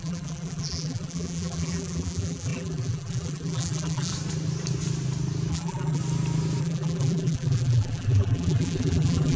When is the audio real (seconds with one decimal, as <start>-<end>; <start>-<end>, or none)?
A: 4.1-5.5; 6.0-6.6